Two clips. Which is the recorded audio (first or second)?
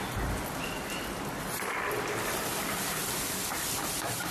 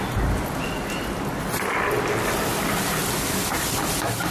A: second